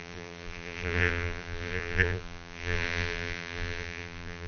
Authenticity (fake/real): fake